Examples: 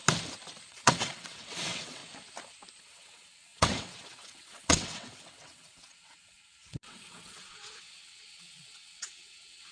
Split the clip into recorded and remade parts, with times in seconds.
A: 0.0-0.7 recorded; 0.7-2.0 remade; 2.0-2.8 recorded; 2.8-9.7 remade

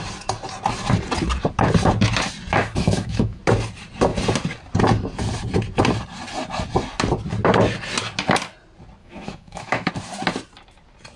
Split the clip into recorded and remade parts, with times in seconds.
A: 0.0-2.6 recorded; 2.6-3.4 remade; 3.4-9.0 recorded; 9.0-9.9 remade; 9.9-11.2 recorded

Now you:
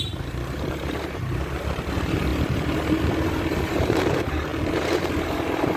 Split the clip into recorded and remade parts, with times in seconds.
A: 0.0-5.8 remade

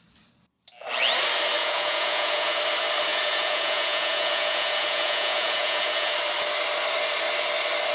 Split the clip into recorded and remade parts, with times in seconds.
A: 0.0-1.6 recorded; 1.6-2.6 remade; 2.6-3.1 recorded; 3.1-6.1 remade; 6.1-7.9 recorded

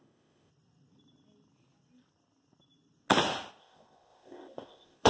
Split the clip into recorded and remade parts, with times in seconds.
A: 0.0-0.5 remade; 0.5-3.6 recorded; 3.6-5.1 remade

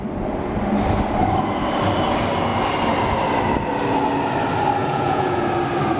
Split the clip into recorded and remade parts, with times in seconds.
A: 0.0-4.8 recorded; 4.8-5.4 remade; 5.4-6.0 recorded

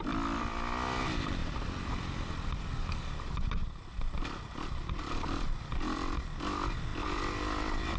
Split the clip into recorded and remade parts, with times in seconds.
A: 0.0-1.4 recorded; 1.4-4.2 remade; 4.2-6.9 recorded; 6.9-8.0 remade